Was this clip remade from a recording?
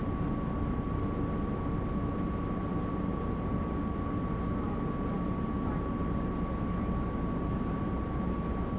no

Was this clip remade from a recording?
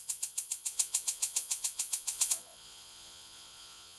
yes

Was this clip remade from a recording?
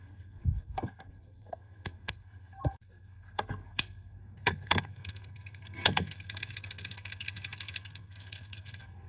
yes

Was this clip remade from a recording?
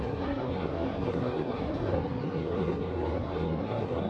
yes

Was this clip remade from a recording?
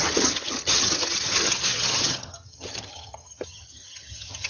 yes